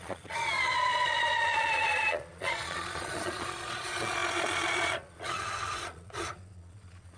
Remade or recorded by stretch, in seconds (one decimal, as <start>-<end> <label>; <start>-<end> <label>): 0.0-7.2 remade